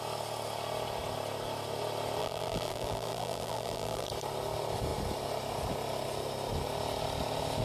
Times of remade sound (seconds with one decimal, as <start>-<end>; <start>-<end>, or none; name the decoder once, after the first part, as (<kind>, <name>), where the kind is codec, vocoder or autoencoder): 2.2-4.1 (vocoder, BigVGAN v2)